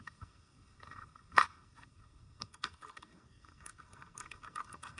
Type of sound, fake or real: fake